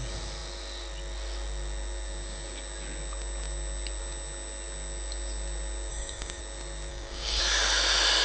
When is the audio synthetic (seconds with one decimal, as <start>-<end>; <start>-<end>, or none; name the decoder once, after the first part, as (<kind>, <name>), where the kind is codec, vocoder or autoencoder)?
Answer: 5.9-6.4 (codec, DAC); 6.9-7.4